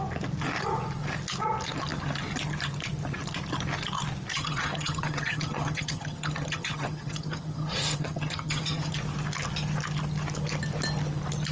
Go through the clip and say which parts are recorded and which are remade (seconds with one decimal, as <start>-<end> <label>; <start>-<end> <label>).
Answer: 0.0-4.3 recorded; 4.3-8.9 remade; 8.9-11.5 recorded